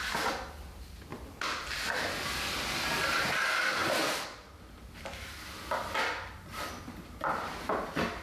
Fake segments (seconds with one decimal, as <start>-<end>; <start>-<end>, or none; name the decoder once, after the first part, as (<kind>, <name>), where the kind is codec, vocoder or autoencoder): 1.1-1.9 (vocoder, BigVGAN v2); 3.8-7.5